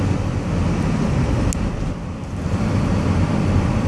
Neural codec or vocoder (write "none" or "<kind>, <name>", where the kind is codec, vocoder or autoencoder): none